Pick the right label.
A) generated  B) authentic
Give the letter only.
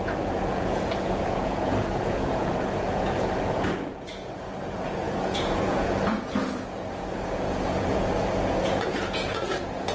A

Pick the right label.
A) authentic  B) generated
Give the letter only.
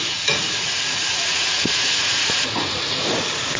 B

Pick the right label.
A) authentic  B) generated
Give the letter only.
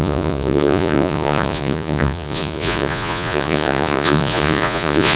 B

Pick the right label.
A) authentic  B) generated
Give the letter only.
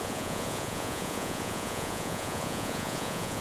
B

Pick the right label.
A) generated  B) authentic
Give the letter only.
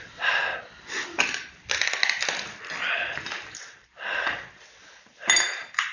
B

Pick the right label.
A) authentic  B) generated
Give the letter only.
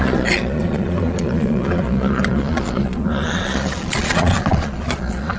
B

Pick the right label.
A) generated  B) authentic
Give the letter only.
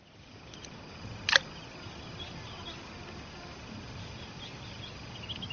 B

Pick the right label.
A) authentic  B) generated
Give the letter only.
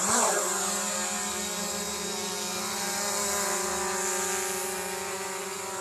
A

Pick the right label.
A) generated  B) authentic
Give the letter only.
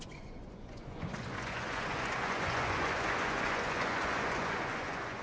A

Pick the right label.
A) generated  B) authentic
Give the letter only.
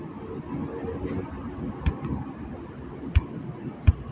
B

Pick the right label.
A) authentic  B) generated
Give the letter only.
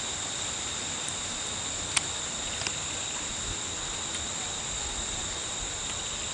A